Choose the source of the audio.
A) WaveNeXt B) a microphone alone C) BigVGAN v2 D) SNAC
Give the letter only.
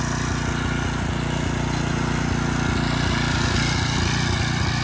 B